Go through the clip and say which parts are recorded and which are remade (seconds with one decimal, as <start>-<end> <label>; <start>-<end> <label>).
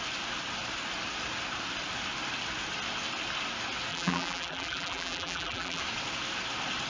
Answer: 0.0-3.9 recorded; 3.9-5.8 remade; 5.8-6.9 recorded